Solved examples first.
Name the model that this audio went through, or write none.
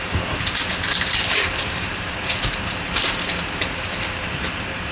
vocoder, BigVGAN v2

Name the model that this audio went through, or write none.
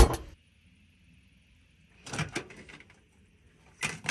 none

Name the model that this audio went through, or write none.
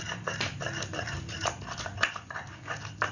none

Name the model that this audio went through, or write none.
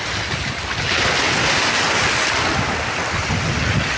none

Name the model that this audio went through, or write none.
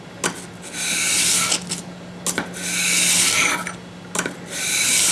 none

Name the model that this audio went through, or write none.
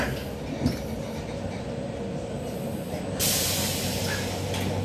none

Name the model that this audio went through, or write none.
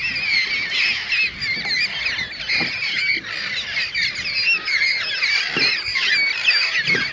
none